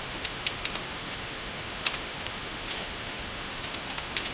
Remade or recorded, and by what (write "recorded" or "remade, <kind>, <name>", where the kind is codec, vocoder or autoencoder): remade, autoencoder, DAC-VAE